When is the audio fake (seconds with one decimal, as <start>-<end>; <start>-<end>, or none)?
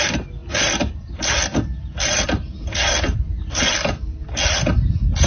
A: none